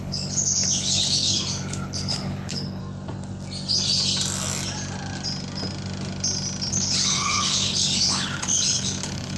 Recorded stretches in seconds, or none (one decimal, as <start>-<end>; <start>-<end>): 2.8-6.7

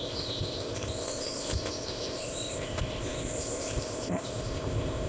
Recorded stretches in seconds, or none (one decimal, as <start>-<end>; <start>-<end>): none

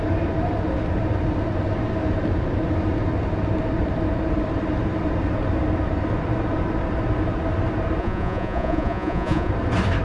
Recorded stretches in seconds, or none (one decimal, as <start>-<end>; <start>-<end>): 0.0-8.0; 9.5-10.0

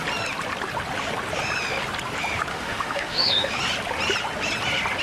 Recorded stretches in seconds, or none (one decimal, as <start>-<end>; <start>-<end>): 0.0-2.5; 3.5-5.0

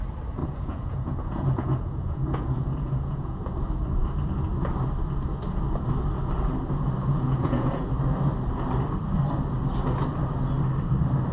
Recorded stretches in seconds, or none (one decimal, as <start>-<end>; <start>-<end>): 0.0-0.4; 3.4-7.0; 7.9-11.3